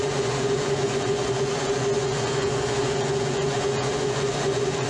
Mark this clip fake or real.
fake